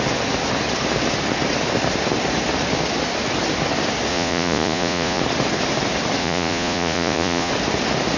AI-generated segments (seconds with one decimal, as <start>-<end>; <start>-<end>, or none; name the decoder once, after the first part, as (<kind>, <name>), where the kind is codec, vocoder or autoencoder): 4.1-5.2 (vocoder, Vocos); 6.2-7.5